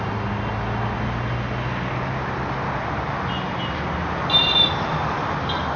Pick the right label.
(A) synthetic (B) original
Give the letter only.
B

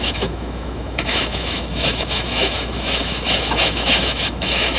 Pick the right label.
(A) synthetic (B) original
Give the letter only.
A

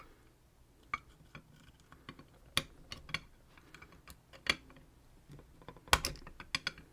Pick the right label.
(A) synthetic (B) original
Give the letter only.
B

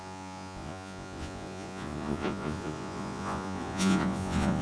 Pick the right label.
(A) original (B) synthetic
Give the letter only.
B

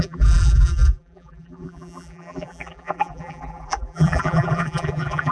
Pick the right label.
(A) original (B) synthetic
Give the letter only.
B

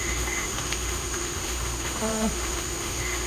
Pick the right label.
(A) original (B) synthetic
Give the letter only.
B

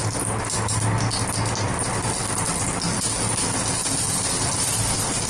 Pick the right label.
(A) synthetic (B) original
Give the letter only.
B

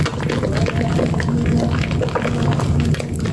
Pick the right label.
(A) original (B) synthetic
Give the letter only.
A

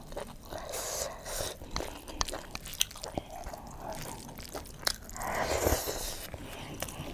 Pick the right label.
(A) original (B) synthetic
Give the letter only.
B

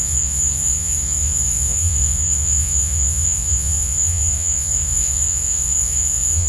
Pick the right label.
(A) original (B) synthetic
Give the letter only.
B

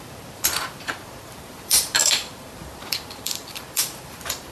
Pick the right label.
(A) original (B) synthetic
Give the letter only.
B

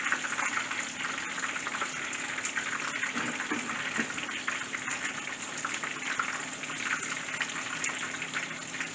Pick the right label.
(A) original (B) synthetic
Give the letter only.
A